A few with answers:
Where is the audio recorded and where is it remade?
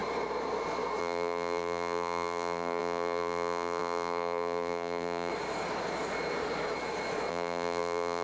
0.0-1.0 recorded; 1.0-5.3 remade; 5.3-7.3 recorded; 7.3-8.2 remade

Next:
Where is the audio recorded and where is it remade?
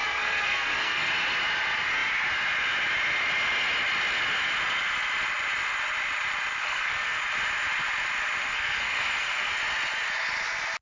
0.0-1.1 remade; 1.1-6.6 recorded; 6.6-7.2 remade; 7.2-8.4 recorded; 8.4-9.5 remade; 9.5-10.8 recorded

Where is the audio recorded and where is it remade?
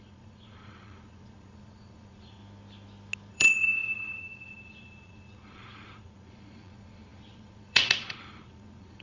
0.0-2.4 remade; 2.4-3.3 recorded; 3.3-9.0 remade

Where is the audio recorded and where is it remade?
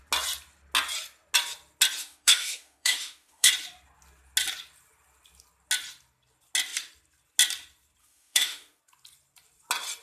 0.0-2.0 recorded; 2.0-3.5 remade; 3.5-8.0 recorded; 8.0-8.8 remade; 8.8-10.0 recorded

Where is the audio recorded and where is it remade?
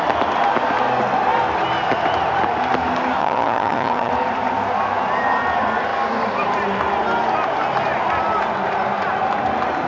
0.0-3.2 recorded; 3.2-4.1 remade; 4.1-9.9 recorded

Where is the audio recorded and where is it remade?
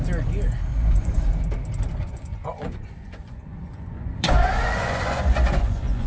0.0-0.7 recorded; 0.7-1.2 remade; 1.2-2.0 recorded; 2.0-6.1 remade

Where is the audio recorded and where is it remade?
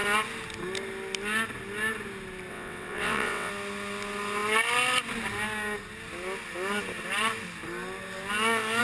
0.0-2.5 recorded; 2.5-3.5 remade; 3.5-8.8 recorded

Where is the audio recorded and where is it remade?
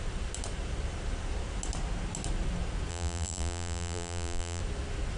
0.0-2.9 recorded; 2.9-4.6 remade; 4.6-5.2 recorded